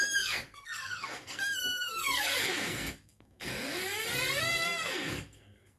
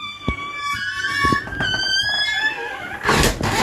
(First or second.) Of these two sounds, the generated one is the first